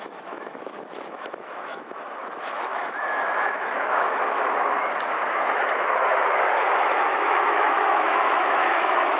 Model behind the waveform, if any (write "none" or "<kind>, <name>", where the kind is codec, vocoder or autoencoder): autoencoder, DAC-VAE